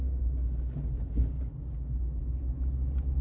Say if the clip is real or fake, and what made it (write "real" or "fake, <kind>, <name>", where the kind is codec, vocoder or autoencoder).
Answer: real